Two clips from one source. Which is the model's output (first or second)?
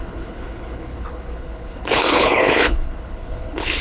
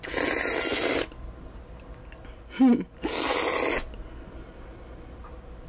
first